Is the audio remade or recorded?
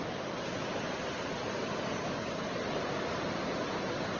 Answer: recorded